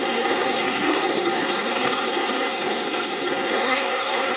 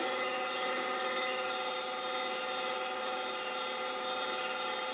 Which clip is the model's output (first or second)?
first